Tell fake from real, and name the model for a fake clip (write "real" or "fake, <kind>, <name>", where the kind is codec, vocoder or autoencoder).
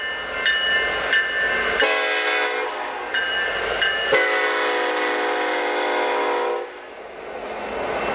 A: real